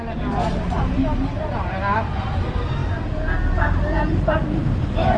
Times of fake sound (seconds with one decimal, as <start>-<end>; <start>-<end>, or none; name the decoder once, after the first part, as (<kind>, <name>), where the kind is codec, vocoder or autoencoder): none